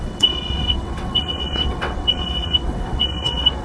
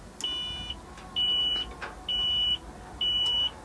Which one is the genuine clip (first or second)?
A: second